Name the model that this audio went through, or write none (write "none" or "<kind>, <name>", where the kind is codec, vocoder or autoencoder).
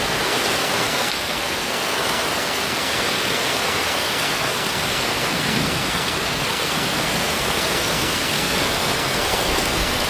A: codec, SNAC